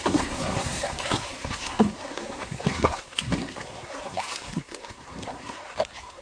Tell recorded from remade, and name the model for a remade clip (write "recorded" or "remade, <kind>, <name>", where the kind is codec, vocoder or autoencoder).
remade, codec, SNAC